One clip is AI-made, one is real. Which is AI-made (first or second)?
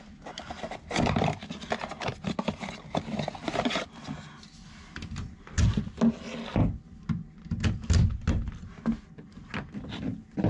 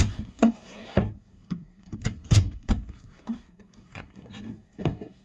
second